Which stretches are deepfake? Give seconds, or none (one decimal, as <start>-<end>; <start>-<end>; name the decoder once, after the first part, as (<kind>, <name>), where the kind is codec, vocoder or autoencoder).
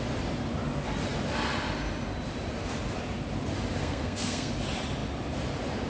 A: 3.8-4.5 (codec, SNAC)